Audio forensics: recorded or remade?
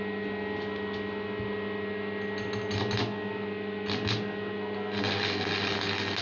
recorded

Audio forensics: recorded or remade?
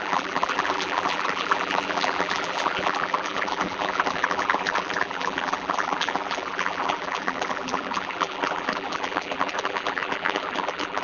remade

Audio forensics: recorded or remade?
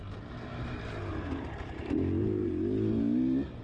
recorded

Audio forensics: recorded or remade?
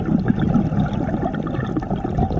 recorded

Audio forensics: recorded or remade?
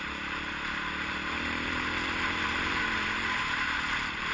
remade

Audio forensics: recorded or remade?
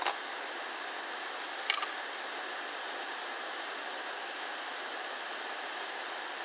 recorded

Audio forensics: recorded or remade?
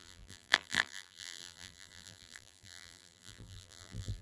remade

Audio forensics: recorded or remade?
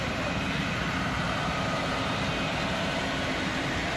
remade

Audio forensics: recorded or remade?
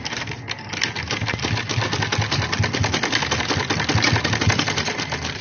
recorded